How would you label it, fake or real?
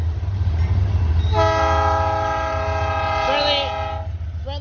real